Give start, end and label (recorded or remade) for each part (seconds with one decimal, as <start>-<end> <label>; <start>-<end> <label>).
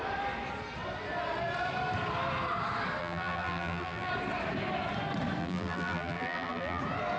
0.0-3.0 recorded; 3.0-4.1 remade; 4.1-5.4 recorded; 5.4-6.8 remade; 6.8-7.2 recorded